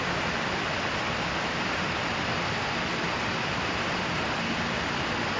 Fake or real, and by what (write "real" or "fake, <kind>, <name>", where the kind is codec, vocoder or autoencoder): real